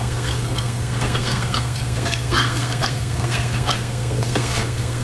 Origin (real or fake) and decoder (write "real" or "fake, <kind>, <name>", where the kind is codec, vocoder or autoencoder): fake, codec, SNAC